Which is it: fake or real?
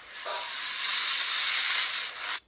real